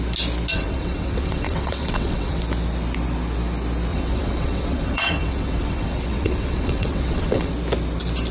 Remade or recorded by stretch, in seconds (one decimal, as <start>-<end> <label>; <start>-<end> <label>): 0.0-0.5 recorded; 0.5-2.4 remade; 2.4-3.9 recorded; 3.9-7.5 remade; 7.5-8.3 recorded